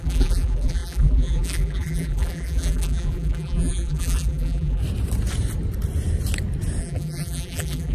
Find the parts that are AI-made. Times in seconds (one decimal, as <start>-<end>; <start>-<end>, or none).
0.0-4.8; 6.8-7.9